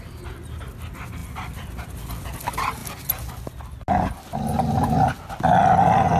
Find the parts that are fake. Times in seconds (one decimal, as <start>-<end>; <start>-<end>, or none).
none